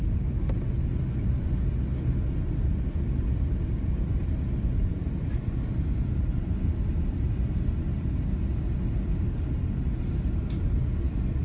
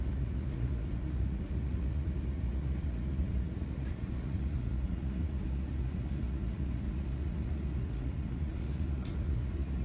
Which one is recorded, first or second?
first